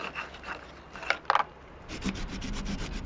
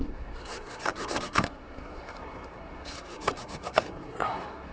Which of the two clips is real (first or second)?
first